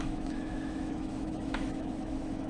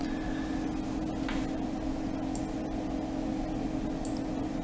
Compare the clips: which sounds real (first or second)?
second